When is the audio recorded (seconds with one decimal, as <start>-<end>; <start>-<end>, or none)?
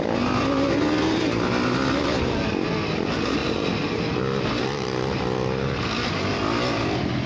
0.0-3.4; 4.0-7.3